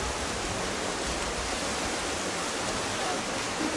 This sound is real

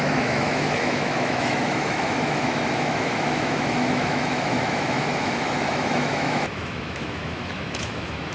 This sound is fake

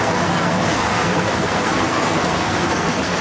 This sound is fake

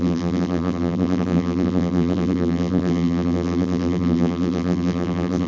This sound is fake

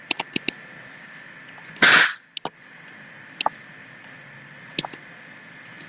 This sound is real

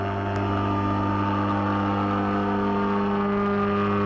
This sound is real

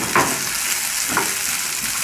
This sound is real